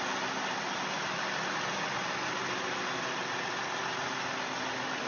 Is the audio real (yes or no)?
yes